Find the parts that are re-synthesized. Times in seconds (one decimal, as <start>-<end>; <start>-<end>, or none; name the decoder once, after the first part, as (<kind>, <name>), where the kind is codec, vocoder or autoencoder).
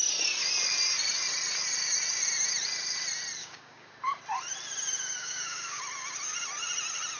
3.4-3.9 (codec, DAC); 5.2-5.8